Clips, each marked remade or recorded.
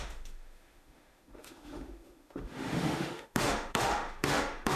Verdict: remade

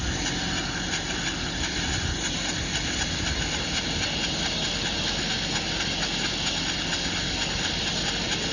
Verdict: recorded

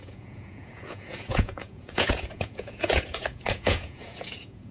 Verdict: remade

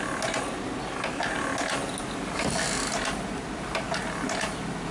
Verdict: recorded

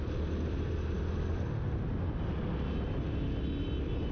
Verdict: recorded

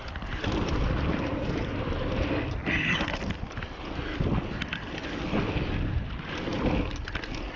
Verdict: recorded